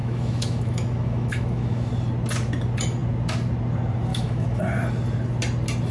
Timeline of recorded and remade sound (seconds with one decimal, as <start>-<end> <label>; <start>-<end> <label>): 0.0-1.9 remade; 1.9-4.1 recorded; 4.1-4.6 remade; 4.6-5.9 recorded